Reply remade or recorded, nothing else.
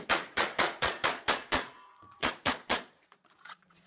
remade